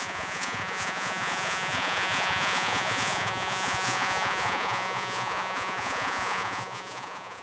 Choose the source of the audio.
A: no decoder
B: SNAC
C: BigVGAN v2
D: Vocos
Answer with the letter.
D